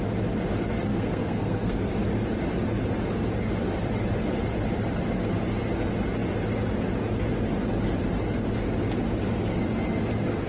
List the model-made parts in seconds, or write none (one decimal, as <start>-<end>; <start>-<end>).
0.9-1.9